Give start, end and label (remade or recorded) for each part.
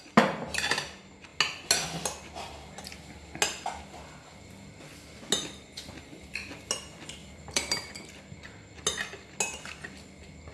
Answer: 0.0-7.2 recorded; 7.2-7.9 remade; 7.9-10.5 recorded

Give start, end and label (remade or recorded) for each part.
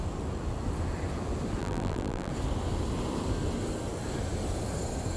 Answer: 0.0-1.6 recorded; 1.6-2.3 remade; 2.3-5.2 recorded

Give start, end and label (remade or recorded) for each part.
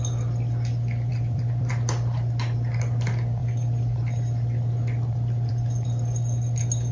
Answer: 0.0-1.1 recorded; 1.1-1.7 remade; 1.7-6.9 recorded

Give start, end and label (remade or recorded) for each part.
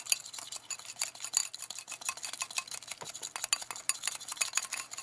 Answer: 0.0-1.4 recorded; 1.4-1.9 remade; 1.9-5.0 recorded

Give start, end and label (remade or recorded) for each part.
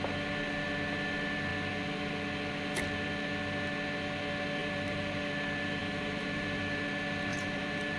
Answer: 0.0-4.6 recorded; 4.6-5.2 remade; 5.2-5.8 recorded; 5.8-6.6 remade; 6.6-7.3 recorded; 7.3-8.0 remade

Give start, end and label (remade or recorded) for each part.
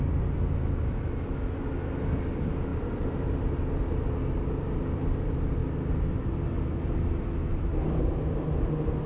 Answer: 0.0-2.7 recorded; 2.7-3.3 remade; 3.3-9.1 recorded